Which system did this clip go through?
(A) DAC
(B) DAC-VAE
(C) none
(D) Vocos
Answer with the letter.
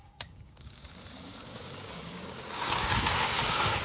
A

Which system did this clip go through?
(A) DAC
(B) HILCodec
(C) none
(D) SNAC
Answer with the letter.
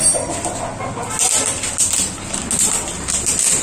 C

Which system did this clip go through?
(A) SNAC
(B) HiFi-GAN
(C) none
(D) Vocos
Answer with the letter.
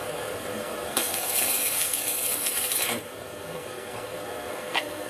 A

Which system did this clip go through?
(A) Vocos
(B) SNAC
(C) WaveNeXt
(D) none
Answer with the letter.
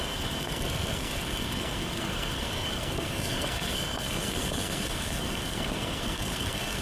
B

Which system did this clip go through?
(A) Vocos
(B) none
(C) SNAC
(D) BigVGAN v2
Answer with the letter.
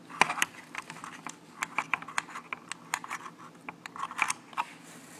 B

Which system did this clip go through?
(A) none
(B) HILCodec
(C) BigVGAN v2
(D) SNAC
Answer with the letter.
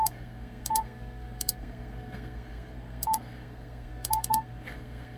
D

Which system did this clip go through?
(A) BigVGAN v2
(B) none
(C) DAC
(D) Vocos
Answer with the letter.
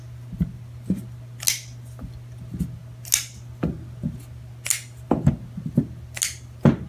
B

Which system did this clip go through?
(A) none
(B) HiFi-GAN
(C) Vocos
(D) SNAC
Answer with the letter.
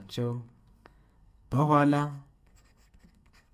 D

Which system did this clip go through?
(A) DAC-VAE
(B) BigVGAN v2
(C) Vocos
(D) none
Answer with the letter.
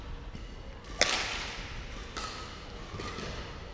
D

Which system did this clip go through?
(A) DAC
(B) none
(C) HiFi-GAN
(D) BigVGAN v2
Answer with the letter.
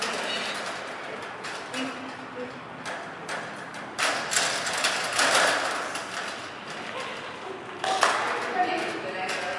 B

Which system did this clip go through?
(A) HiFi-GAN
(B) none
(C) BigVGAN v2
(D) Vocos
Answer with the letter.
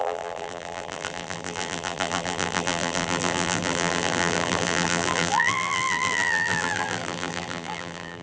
C